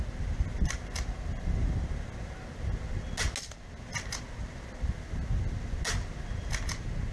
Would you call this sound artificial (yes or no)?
no